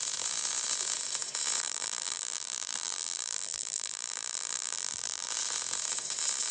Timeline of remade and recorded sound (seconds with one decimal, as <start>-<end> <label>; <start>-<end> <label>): 0.0-1.6 recorded; 1.6-5.3 remade; 5.3-6.5 recorded